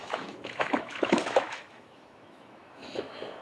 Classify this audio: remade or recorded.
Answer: remade